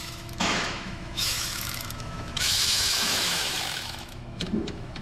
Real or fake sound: fake